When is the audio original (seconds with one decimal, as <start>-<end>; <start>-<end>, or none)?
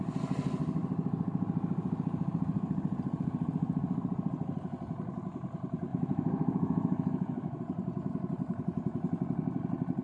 0.0-5.9; 7.6-10.0